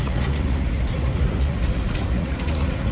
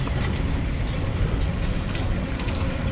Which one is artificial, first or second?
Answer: first